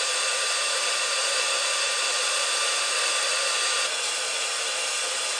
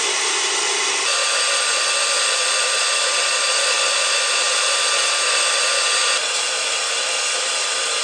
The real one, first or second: second